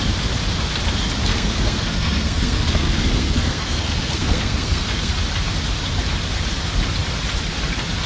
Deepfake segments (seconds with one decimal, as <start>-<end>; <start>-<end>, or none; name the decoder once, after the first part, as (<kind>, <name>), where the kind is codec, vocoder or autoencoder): 1.3-5.1 (codec, SNAC)